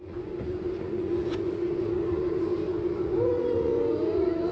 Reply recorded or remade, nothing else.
remade